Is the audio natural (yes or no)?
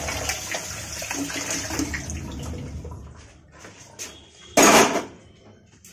yes